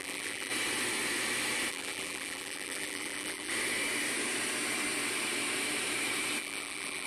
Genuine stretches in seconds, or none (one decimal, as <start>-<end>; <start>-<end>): 0.5-1.7; 3.5-6.4